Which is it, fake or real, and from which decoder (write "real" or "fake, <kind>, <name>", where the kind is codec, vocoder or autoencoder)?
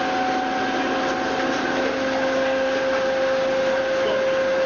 real